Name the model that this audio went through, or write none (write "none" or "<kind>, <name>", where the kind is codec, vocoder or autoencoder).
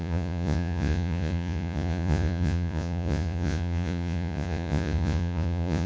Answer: vocoder, Vocos